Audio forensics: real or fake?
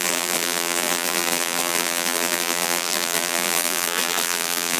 fake